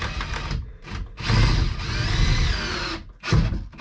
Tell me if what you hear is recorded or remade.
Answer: recorded